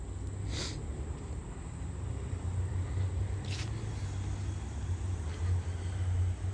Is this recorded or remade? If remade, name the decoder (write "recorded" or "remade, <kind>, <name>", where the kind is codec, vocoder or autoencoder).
recorded